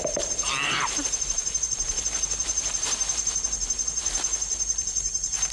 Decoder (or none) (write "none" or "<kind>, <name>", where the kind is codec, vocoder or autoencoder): vocoder, BigVGAN v2